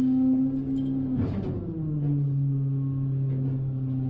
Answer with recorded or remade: recorded